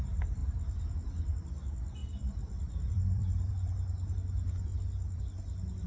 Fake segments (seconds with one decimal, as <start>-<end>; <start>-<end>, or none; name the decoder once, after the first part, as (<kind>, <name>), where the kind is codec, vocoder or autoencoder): 0.4-1.1 (vocoder, BigVGAN v2); 2.0-3.5; 4.7-5.2